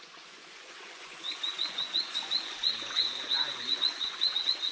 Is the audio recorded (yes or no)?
no